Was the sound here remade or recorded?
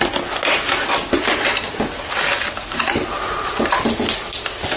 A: recorded